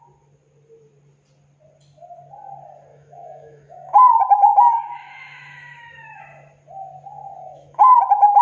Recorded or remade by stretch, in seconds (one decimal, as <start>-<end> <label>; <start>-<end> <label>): 0.0-2.9 recorded; 2.9-6.2 remade; 6.2-7.4 recorded; 7.4-8.0 remade; 8.0-8.4 recorded